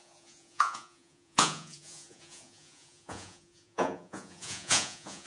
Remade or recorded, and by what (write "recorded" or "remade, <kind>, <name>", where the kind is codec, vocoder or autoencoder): remade, vocoder, Vocos